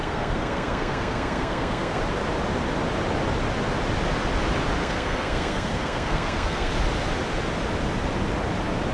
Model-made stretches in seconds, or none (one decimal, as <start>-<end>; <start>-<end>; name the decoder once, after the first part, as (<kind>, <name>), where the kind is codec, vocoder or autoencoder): 0.0-2.0 (codec, SNAC); 4.8-6.7